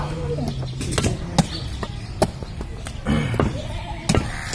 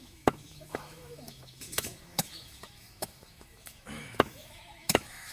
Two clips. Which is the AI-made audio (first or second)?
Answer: second